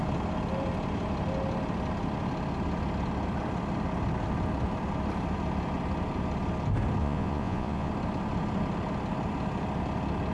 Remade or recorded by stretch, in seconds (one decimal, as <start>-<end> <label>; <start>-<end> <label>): 0.0-7.0 recorded; 7.0-7.9 remade; 7.9-10.3 recorded